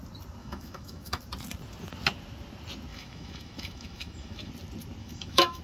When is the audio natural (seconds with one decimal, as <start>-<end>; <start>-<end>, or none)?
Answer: 0.0-0.4; 1.2-2.9; 4.5-5.0